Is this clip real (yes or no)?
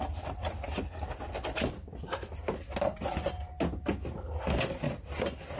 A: yes